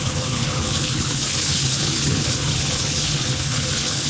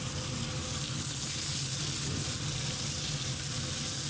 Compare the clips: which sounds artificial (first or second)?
first